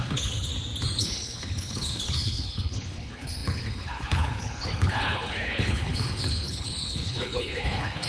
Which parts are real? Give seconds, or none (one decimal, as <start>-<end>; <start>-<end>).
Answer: 0.5-1.0